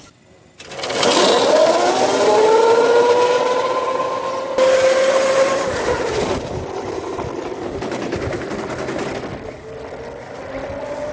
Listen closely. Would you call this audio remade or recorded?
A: recorded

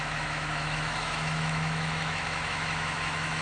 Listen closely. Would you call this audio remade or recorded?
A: remade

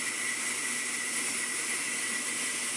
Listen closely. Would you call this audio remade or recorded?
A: recorded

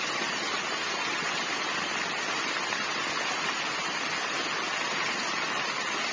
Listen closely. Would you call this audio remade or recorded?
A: recorded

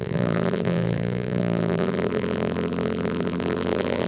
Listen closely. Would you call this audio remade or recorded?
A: remade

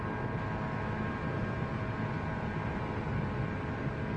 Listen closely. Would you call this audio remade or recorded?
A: recorded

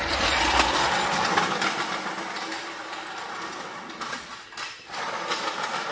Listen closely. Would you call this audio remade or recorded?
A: recorded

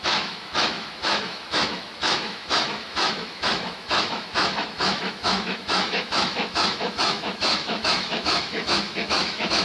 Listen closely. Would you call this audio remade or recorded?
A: remade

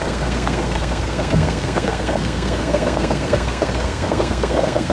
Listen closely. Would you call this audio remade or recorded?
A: remade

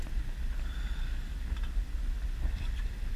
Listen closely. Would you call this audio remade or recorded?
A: recorded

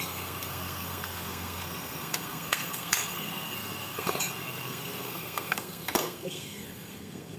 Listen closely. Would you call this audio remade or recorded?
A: remade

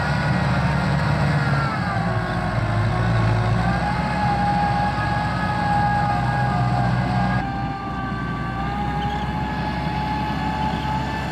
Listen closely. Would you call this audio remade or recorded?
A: recorded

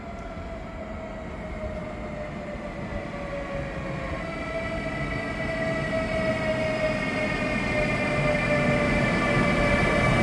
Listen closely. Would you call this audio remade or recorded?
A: recorded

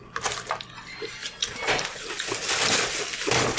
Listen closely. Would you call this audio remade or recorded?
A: recorded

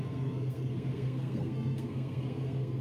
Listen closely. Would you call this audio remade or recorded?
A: remade